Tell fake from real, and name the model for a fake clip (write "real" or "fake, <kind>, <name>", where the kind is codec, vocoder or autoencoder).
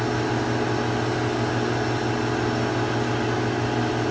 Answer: real